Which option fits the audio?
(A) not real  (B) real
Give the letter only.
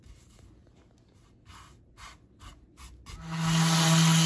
B